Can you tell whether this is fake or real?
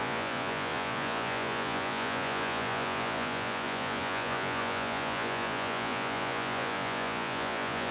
fake